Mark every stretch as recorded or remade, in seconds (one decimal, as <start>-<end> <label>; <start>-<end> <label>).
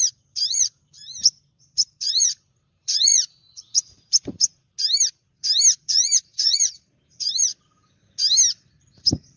0.0-4.5 remade; 4.5-5.7 recorded; 5.7-7.5 remade; 7.5-8.7 recorded; 8.7-9.4 remade